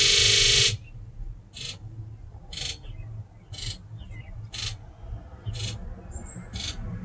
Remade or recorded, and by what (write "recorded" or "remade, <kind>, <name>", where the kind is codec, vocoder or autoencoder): recorded